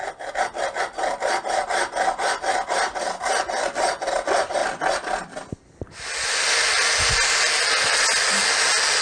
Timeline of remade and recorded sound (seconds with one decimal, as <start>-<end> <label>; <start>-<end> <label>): 0.0-9.0 recorded